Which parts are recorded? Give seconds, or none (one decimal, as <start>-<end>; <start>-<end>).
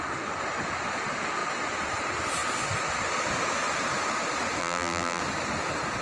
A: 0.0-4.6; 5.2-6.0